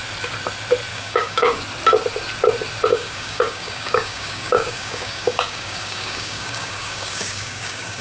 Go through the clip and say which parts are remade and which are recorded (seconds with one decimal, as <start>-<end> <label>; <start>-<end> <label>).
0.0-0.9 recorded; 0.9-1.6 remade; 1.6-2.9 recorded; 2.9-8.0 remade